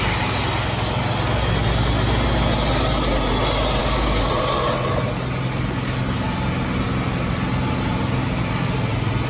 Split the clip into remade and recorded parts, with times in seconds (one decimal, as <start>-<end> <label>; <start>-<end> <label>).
0.0-3.8 recorded; 3.8-4.3 remade; 4.3-9.3 recorded

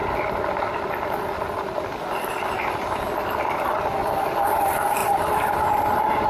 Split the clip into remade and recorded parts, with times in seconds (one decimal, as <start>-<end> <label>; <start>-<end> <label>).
0.0-5.0 recorded; 5.0-5.5 remade; 5.5-6.3 recorded